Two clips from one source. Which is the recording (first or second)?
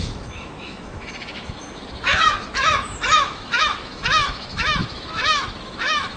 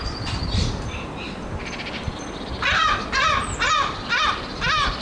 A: second